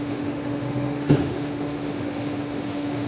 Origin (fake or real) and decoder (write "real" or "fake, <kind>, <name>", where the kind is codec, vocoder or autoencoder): fake, autoencoder, DAC-VAE